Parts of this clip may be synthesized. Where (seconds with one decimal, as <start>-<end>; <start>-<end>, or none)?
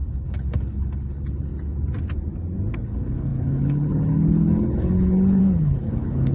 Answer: 0.0-1.5; 2.7-6.3